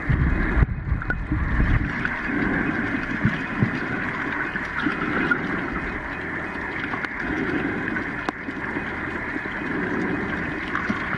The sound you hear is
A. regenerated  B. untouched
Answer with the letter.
B